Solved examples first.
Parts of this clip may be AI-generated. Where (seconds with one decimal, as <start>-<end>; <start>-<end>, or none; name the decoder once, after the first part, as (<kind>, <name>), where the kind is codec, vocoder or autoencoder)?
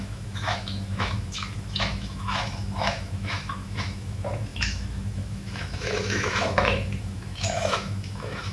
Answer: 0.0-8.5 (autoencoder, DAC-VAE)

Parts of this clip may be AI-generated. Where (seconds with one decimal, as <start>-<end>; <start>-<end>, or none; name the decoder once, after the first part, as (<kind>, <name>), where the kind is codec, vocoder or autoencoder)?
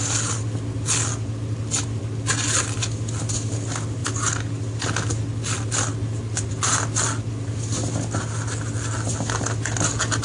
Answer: none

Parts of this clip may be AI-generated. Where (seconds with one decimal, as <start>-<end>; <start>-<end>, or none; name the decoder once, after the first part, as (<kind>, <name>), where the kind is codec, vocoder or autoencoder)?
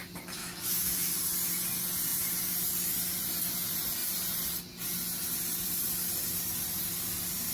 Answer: 0.4-1.1 (autoencoder, DAC-VAE)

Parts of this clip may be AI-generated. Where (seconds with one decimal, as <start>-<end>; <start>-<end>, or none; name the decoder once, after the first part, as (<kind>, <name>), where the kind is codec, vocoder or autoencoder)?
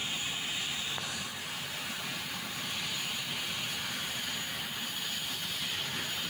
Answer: none